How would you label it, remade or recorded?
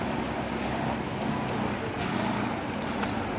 recorded